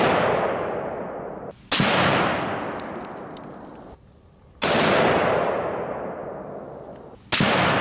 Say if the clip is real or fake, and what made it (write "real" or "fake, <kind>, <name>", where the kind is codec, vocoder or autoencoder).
real